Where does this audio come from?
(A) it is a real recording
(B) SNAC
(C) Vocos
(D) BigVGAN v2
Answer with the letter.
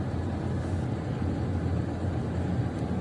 A